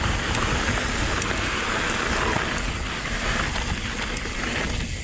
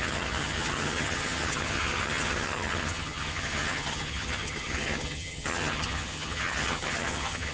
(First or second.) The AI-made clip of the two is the second